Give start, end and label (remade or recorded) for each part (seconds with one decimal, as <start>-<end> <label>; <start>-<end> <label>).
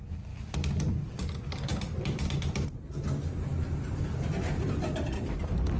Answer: 0.0-5.8 recorded